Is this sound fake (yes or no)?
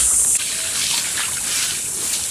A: yes